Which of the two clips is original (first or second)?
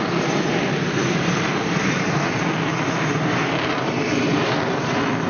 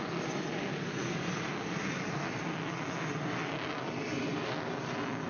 second